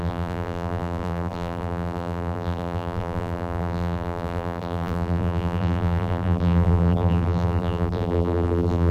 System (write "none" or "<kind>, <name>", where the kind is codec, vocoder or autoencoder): vocoder, BigVGAN v2